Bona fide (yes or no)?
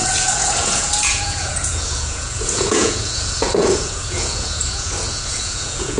no